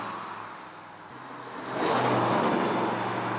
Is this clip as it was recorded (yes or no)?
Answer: yes